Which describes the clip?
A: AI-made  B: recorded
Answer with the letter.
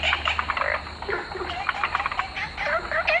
B